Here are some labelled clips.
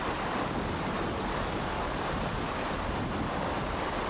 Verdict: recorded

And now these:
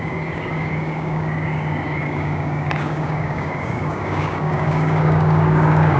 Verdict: remade